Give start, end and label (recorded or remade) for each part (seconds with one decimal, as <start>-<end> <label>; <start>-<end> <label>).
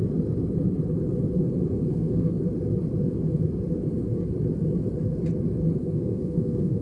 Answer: 0.0-1.9 recorded; 1.9-2.4 remade; 2.4-5.8 recorded; 5.8-6.8 remade